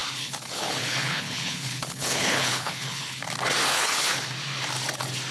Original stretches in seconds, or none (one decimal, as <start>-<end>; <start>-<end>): 3.2-3.7; 4.2-5.3